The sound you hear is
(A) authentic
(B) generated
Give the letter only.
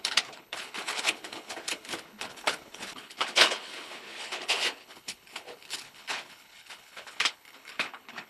B